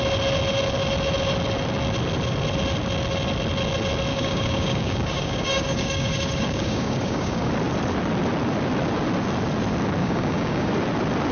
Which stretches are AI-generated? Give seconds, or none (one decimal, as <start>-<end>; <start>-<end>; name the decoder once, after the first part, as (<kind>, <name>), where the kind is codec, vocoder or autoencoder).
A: 4.1-7.5 (codec, DAC); 10.0-10.7